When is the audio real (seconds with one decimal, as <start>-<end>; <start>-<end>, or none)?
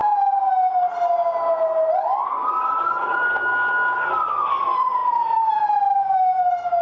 0.0-6.8